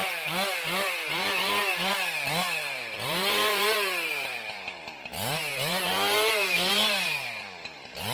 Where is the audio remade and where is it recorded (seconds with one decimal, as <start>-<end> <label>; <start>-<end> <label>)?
0.0-8.1 remade